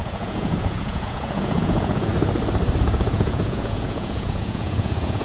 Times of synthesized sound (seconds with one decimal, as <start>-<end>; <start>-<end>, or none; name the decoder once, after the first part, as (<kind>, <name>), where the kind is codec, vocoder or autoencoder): 0.0-2.1 (vocoder, Vocos); 2.8-5.2